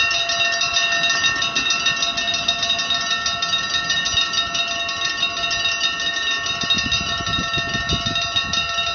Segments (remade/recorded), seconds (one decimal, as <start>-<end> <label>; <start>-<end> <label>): 0.0-8.9 recorded